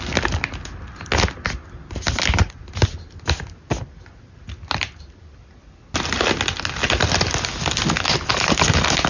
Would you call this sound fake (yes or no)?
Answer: no